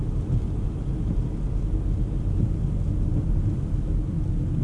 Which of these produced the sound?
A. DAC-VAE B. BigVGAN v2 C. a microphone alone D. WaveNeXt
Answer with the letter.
C